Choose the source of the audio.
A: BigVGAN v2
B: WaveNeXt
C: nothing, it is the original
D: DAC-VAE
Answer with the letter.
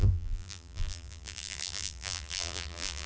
A